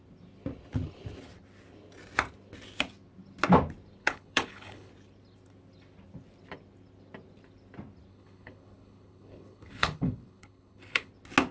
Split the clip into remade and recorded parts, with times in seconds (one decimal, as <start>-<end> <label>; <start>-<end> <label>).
0.0-4.0 recorded; 4.0-4.9 remade; 4.9-8.1 recorded; 8.1-11.1 remade; 11.1-11.5 recorded